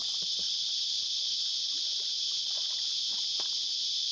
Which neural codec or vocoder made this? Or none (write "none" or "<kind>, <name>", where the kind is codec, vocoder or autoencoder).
none